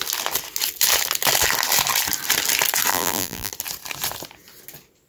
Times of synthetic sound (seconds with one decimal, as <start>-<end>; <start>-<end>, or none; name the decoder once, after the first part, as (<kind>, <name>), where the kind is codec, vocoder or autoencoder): 2.9-3.5 (vocoder, BigVGAN v2)